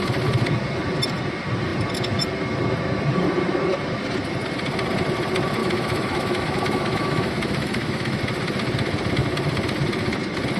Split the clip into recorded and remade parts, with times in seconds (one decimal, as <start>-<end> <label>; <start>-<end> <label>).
0.0-5.6 recorded; 5.6-8.2 remade; 8.2-10.6 recorded